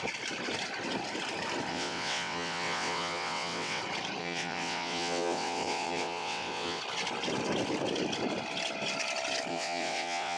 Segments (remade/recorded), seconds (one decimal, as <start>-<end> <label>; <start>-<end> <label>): 0.0-1.7 recorded; 1.7-3.8 remade; 3.8-4.2 recorded; 4.2-6.8 remade; 6.8-9.5 recorded; 9.5-10.4 remade